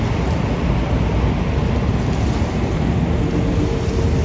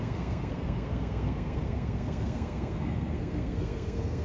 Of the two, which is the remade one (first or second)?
second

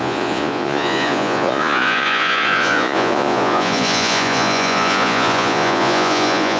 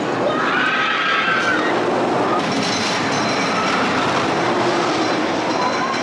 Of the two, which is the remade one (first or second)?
first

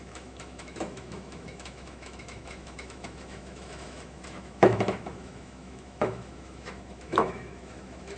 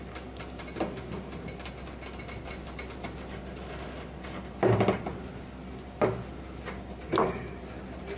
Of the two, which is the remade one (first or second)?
first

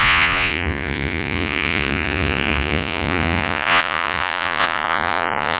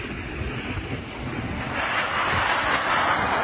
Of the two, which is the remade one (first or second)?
first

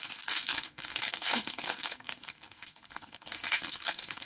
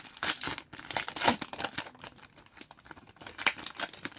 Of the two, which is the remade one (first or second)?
first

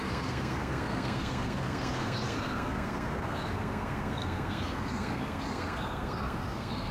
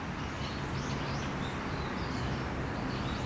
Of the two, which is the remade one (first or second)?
first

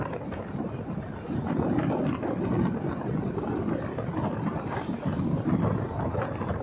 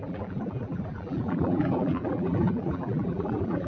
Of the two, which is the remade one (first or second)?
second